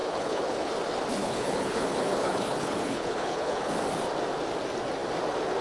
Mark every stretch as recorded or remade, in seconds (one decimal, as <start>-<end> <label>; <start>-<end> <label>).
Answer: 0.0-0.7 remade; 0.7-1.2 recorded; 1.2-3.7 remade; 3.7-5.6 recorded